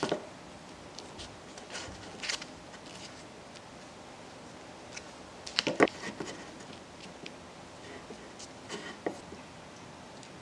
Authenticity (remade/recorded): recorded